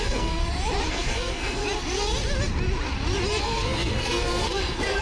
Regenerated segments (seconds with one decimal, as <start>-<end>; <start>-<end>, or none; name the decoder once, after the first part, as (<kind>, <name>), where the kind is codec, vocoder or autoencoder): 0.0-0.4 (codec, SNAC); 0.9-1.6; 3.4-5.0